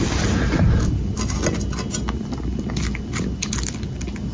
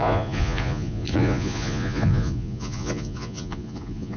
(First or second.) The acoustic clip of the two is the first